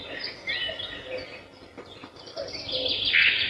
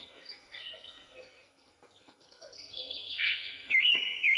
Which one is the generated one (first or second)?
second